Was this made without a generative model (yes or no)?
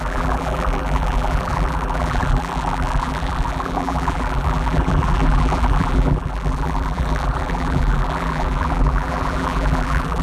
no